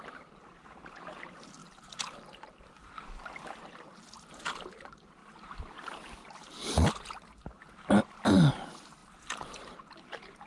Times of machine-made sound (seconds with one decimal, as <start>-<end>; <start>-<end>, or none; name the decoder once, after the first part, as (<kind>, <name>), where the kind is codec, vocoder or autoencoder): 0.0-5.2 (vocoder, BigVGAN v2); 8.5-10.5